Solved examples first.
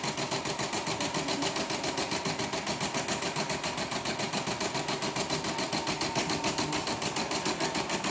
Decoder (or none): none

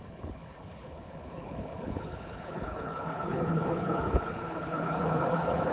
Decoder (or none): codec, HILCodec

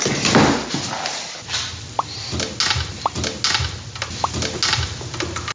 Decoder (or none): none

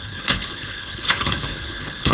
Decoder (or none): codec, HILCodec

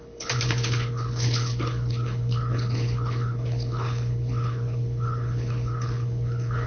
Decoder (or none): codec, HILCodec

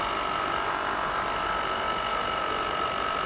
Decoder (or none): none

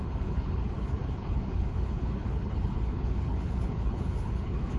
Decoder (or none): codec, HILCodec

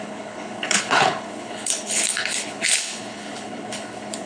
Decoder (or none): codec, HILCodec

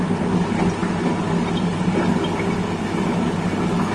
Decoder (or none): none